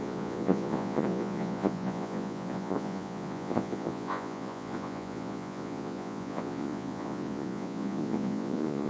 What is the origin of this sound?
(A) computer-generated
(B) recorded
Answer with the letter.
A